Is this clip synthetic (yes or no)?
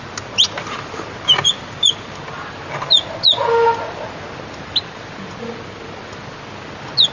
no